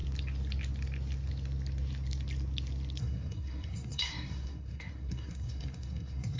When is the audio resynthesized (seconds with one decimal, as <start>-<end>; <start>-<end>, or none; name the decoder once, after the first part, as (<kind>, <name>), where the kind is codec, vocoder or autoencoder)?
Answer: 3.0-6.4 (codec, SNAC)